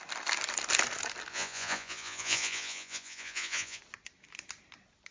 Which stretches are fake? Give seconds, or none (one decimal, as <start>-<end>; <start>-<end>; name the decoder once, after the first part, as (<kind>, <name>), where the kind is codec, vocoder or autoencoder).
1.3-3.8 (vocoder, Vocos)